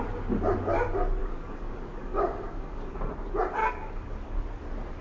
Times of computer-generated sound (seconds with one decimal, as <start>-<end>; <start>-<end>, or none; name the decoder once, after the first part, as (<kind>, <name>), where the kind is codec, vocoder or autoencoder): 1.2-3.1 (codec, DAC); 3.6-4.4

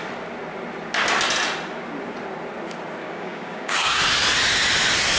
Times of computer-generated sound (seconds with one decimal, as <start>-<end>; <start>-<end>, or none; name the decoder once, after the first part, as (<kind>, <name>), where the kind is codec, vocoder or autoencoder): 3.0-4.0 (codec, DAC)

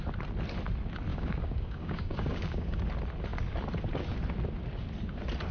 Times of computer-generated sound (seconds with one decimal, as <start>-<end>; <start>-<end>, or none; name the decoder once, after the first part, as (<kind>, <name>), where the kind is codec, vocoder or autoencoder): 1.1-2.8 (codec, DAC)

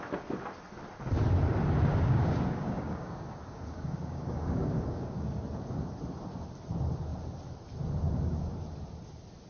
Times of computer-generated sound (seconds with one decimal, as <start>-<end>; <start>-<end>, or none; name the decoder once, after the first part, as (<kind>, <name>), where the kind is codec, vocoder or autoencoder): 1.9-5.4 (codec, DAC)